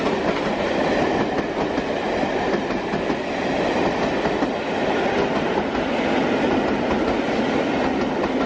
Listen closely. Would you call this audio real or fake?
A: real